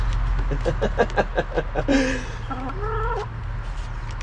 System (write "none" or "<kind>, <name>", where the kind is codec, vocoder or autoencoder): none